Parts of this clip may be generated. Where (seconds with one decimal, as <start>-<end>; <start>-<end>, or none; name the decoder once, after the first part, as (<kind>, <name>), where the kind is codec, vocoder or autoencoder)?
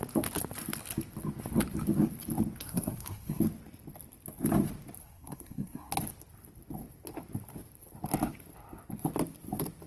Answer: 2.6-3.4 (codec, SNAC); 5.0-5.9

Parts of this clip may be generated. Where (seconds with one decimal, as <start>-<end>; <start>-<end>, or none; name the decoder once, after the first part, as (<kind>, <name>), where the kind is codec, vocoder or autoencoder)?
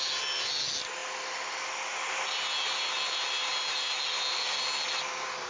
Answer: none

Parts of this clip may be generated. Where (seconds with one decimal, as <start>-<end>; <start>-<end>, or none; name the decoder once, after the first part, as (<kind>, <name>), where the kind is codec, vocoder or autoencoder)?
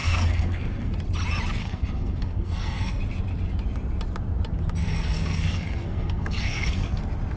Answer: 0.0-0.9 (codec, SNAC); 1.6-3.0; 4.8-7.0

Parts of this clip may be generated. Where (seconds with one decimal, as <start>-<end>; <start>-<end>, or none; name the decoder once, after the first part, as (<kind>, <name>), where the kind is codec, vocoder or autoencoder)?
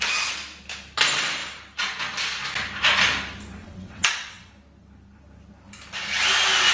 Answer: 3.6-4.5 (vocoder, WaveNeXt)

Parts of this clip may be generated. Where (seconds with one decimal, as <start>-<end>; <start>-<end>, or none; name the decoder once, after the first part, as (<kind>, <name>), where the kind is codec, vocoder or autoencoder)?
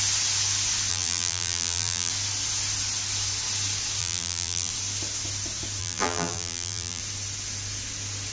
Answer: 0.9-2.1 (vocoder, BigVGAN v2); 4.0-4.7; 5.8-7.0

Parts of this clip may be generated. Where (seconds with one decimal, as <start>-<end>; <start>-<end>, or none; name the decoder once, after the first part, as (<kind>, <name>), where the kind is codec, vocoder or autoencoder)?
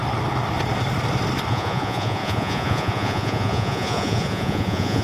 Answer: 1.5-5.0 (vocoder, Vocos)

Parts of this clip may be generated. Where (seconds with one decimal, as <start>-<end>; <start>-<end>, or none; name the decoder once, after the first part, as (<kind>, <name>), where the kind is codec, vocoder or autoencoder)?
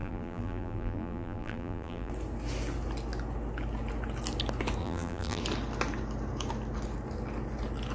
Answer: 0.0-2.1 (vocoder, BigVGAN v2); 4.8-5.4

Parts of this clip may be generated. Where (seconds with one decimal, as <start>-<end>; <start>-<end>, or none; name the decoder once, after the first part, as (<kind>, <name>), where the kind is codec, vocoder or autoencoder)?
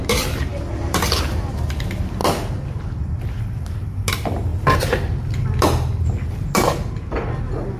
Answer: 0.5-1.3 (vocoder, BigVGAN v2)